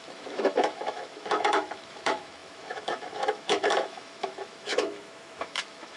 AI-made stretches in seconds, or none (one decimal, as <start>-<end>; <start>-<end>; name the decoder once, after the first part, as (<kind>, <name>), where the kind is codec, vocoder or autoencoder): 0.0-6.0 (autoencoder, DAC-VAE)